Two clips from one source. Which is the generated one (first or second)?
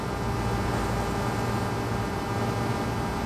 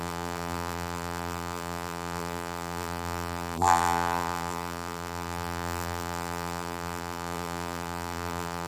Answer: second